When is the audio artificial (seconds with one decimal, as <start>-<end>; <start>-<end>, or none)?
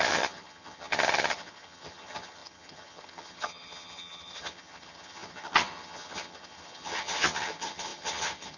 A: 0.0-8.6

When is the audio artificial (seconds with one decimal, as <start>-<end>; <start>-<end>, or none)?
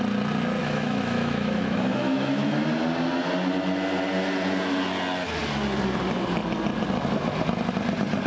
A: 0.6-2.6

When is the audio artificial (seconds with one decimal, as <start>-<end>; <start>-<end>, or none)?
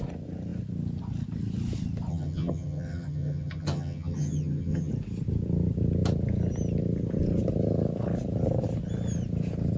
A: 2.1-4.9